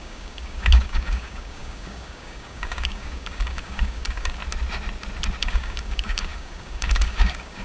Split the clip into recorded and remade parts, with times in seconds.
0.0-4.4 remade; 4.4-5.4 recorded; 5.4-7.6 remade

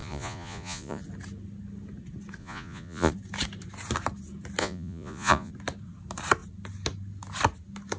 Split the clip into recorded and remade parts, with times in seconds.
0.0-1.0 remade; 1.0-2.4 recorded; 2.4-3.1 remade; 3.1-4.6 recorded; 4.6-5.5 remade; 5.5-8.0 recorded

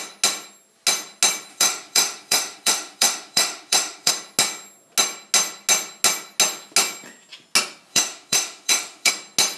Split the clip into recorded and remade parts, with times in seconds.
0.0-1.5 recorded; 1.5-4.1 remade; 4.1-7.9 recorded; 7.9-9.1 remade; 9.1-9.6 recorded

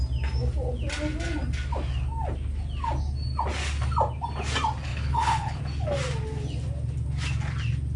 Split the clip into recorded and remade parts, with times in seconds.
0.0-4.9 recorded; 4.9-5.6 remade; 5.6-8.0 recorded

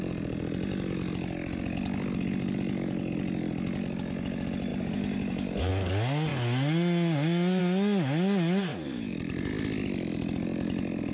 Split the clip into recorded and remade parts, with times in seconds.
0.0-4.7 recorded; 4.7-5.7 remade; 5.7-8.7 recorded; 8.7-9.5 remade; 9.5-11.1 recorded

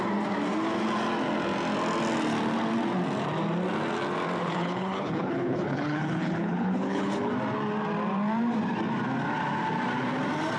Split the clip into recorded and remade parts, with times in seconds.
0.0-4.4 recorded; 4.4-7.3 remade; 7.3-10.6 recorded